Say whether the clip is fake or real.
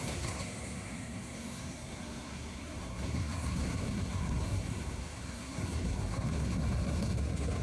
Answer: fake